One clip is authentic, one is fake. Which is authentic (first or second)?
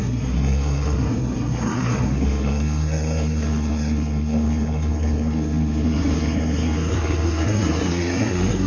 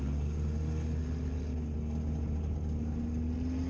second